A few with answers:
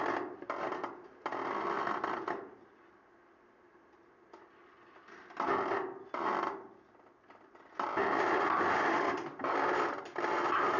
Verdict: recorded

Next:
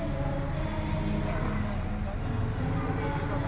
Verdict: recorded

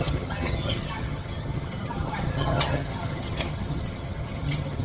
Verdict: remade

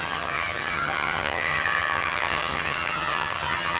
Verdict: remade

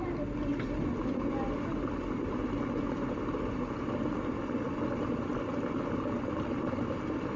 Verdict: recorded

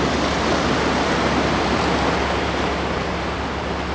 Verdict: recorded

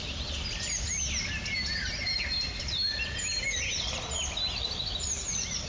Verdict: recorded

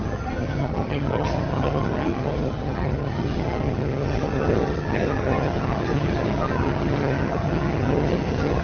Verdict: remade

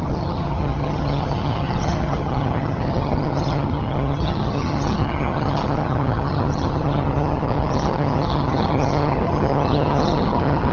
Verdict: remade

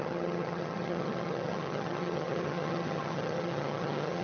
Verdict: remade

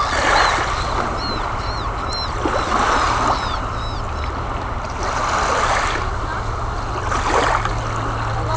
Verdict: recorded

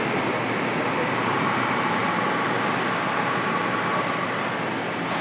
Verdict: recorded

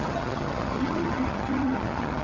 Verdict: remade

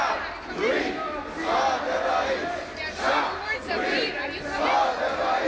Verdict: recorded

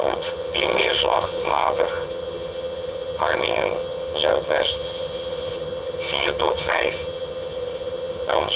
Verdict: remade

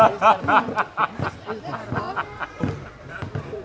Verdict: recorded